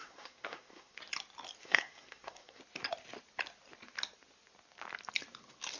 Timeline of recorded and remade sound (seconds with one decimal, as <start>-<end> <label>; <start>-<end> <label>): 0.0-1.0 remade; 1.0-1.6 recorded; 1.6-2.6 remade; 2.6-5.8 recorded